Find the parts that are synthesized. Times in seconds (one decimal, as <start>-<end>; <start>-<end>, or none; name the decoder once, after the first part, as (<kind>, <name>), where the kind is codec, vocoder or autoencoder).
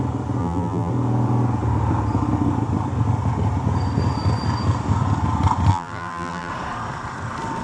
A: 0.4-0.9 (vocoder, BigVGAN v2); 5.7-6.5